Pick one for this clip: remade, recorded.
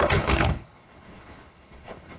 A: remade